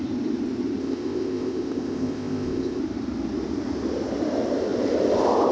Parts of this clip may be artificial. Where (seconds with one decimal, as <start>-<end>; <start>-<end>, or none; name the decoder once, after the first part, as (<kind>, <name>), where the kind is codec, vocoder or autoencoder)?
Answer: 0.8-2.8 (codec, ZipCodec)